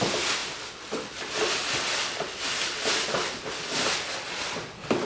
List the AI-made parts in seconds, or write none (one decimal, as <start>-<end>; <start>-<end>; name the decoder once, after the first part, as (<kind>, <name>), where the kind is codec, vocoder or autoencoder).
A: none